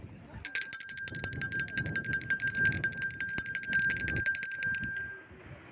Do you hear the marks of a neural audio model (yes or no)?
no